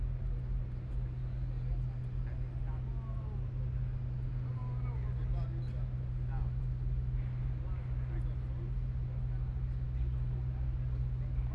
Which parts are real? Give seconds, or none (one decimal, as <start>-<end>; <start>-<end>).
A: 0.0-11.5

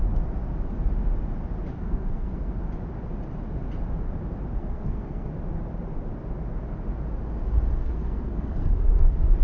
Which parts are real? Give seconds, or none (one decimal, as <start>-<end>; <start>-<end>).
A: 0.0-1.7; 2.6-4.6; 5.3-7.8

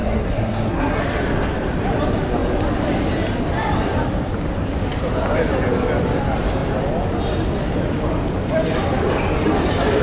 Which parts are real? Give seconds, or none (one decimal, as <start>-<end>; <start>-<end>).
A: 1.0-10.0

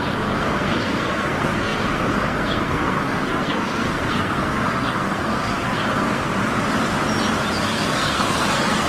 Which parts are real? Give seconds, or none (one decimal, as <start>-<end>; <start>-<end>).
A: 6.3-7.6

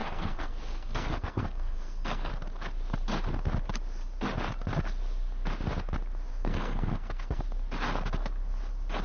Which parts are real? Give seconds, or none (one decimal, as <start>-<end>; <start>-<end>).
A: 2.3-6.3; 7.4-9.0

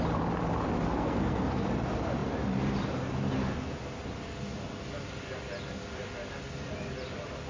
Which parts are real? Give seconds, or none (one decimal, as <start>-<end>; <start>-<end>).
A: 0.0-0.9; 1.6-7.5